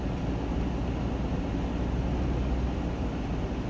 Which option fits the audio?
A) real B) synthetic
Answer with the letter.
A